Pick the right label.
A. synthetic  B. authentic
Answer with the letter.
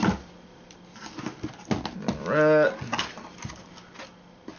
B